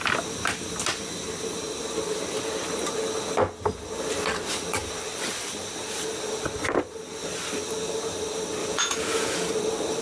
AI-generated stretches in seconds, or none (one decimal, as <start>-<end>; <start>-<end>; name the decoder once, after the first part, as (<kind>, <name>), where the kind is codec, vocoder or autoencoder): 8.6-9.4 (vocoder, Vocos)